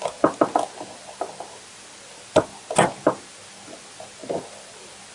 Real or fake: real